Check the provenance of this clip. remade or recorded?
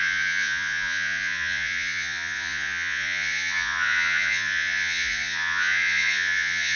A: remade